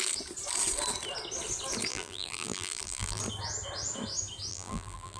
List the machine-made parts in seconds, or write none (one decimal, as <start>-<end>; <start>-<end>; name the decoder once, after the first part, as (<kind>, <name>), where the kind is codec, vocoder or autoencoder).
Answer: 1.9-3.2 (vocoder, BigVGAN v2); 4.5-5.2